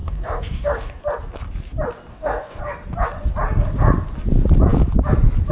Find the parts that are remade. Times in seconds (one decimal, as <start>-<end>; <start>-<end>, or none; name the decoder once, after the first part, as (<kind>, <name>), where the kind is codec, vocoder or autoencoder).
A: 0.0-1.0 (codec, DAC); 2.1-2.6